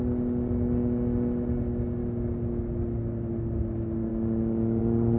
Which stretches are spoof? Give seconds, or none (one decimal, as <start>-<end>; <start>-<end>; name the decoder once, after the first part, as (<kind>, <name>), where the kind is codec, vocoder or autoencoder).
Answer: none